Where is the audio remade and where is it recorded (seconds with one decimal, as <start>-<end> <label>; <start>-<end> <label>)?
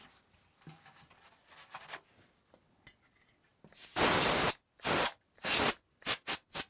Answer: 0.0-6.7 recorded